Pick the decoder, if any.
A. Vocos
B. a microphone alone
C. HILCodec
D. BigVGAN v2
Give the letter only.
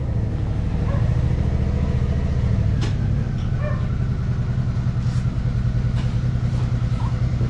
B